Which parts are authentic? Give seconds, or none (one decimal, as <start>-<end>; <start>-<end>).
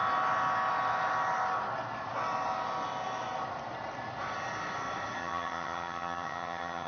0.0-5.2